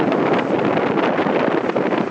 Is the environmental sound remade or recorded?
recorded